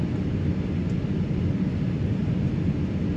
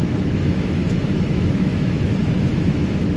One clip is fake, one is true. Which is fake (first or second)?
second